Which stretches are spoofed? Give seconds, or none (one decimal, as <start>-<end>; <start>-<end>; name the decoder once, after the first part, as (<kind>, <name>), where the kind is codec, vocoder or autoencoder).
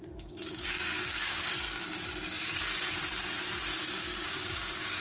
0.0-1.5 (codec, DAC); 3.8-5.0